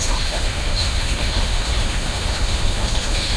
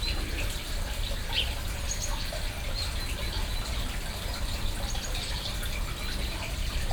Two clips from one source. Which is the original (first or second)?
second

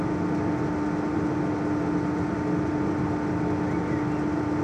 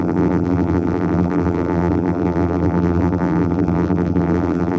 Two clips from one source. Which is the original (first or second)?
first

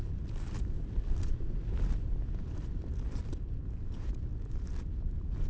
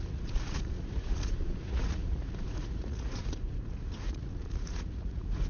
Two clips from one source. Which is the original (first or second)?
first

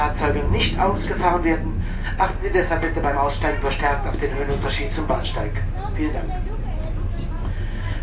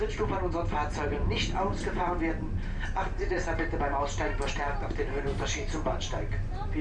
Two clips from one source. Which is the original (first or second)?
first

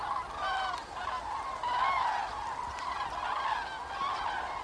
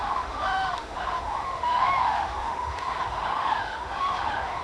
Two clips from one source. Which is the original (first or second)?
first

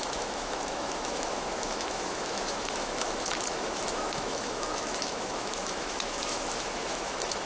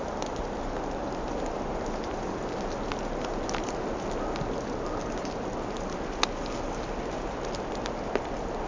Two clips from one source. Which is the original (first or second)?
second